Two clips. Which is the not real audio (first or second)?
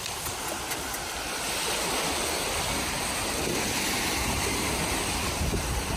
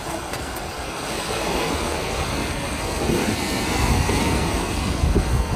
second